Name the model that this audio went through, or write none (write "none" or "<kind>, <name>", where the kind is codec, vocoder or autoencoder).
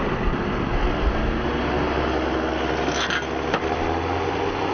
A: none